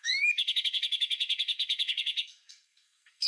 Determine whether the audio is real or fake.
fake